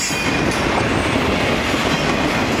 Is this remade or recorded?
recorded